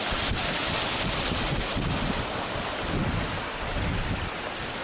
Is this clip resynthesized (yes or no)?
no